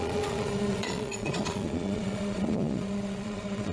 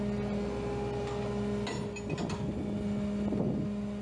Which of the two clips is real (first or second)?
second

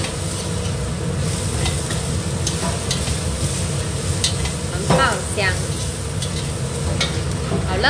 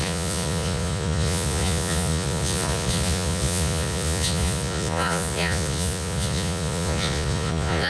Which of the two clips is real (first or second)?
first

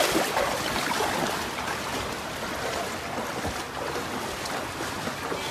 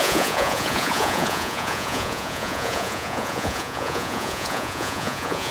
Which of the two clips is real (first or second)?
first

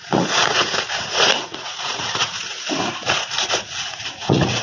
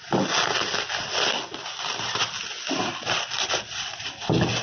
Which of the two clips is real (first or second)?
second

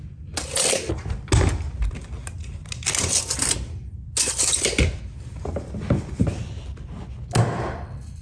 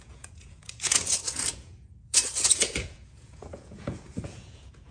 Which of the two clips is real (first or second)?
first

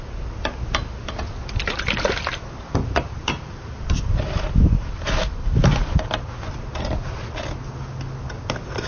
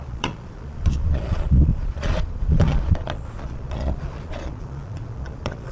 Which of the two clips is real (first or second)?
first